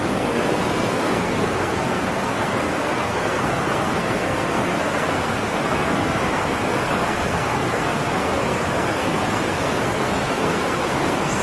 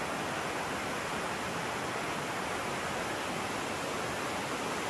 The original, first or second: second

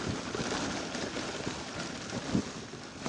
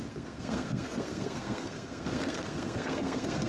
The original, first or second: first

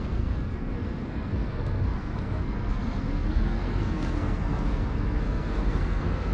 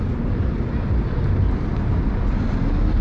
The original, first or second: second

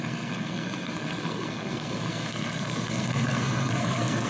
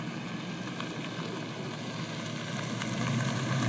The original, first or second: second